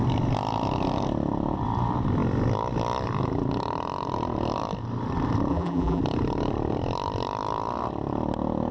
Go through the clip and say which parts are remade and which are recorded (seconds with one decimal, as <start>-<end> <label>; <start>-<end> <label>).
0.0-5.5 recorded; 5.5-6.0 remade; 6.0-8.7 recorded

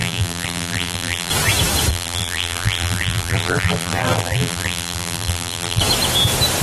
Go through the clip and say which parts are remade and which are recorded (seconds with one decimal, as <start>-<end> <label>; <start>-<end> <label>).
0.0-1.3 remade; 1.3-1.9 recorded; 1.9-5.8 remade; 5.8-6.6 recorded

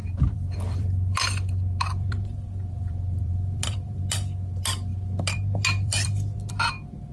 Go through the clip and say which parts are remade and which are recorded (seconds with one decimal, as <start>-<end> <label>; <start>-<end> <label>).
0.0-4.0 remade; 4.0-4.9 recorded; 4.9-6.5 remade; 6.5-7.1 recorded